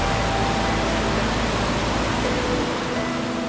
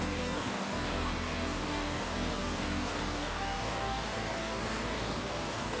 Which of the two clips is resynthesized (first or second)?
second